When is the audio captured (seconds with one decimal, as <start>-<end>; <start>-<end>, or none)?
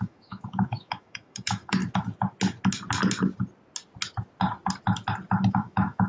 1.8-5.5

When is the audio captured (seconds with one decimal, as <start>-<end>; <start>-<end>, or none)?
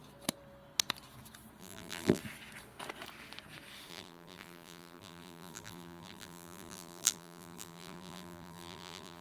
0.0-1.6; 2.2-3.9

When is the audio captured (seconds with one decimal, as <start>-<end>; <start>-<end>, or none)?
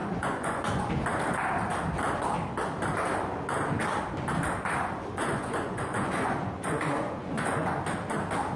0.9-5.1; 7.8-8.6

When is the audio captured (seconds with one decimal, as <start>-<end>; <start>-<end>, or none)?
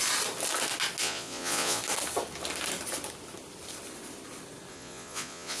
0.0-1.0; 1.8-4.7